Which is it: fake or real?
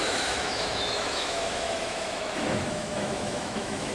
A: fake